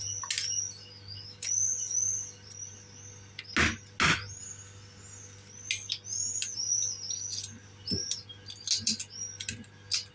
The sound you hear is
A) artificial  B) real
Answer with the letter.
B